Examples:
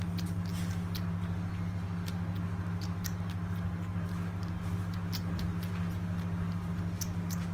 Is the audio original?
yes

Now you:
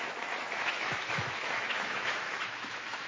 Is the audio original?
no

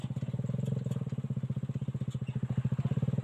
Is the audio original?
yes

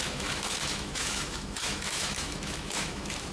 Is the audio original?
no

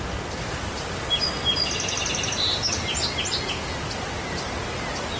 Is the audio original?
yes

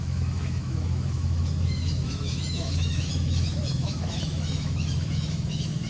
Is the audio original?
no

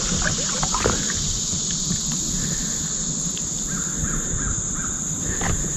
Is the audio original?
yes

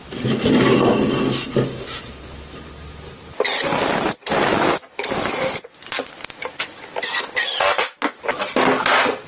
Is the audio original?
yes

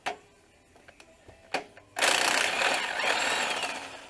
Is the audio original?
yes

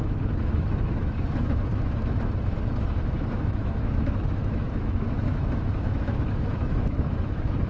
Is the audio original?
no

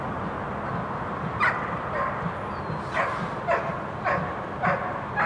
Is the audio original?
yes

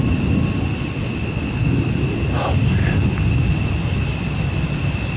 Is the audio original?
yes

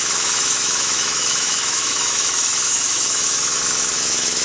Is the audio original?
no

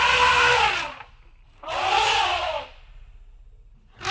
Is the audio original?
yes